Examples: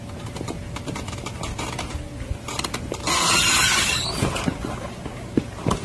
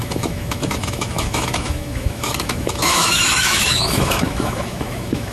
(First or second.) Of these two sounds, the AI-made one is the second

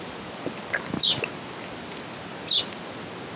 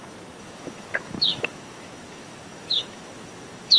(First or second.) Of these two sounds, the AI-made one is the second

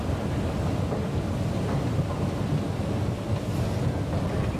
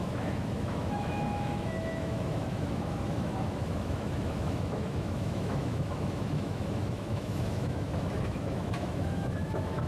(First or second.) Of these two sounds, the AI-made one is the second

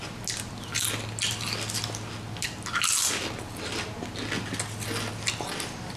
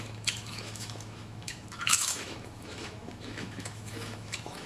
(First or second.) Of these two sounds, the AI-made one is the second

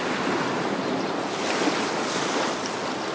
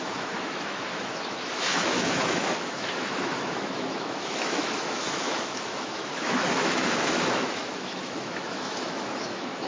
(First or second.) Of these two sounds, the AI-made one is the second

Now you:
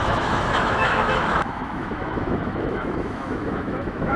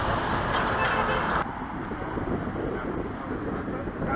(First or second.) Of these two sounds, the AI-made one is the first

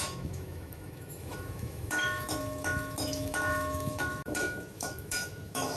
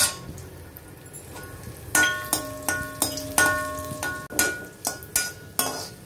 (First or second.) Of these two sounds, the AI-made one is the first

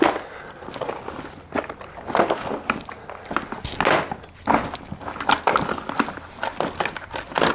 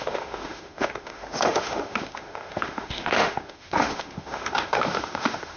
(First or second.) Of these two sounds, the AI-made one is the second